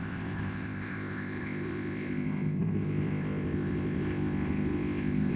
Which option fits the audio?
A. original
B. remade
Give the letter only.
B